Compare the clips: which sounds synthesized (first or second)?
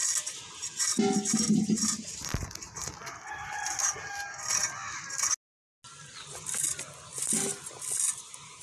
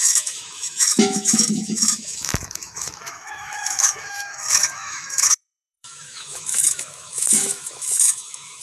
second